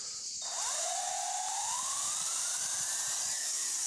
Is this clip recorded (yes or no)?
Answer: no